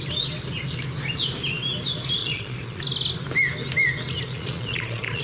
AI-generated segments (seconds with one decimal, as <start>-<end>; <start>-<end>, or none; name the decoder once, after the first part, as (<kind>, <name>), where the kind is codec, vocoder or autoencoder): 2.2-2.8 (vocoder, Vocos); 4.3-5.2